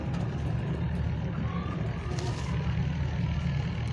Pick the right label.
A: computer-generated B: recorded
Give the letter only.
B